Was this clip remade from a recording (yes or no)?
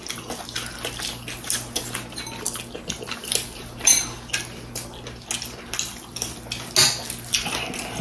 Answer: no